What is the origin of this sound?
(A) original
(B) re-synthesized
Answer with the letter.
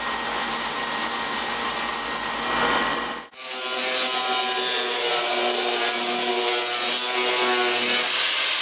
A